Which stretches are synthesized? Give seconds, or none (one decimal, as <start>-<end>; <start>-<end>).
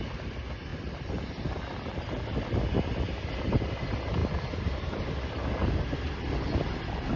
none